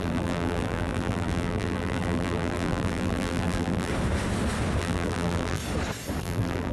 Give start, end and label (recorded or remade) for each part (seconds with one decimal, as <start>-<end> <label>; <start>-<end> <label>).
0.0-3.9 remade; 3.9-4.8 recorded; 4.8-5.6 remade; 5.6-6.2 recorded; 6.2-6.7 remade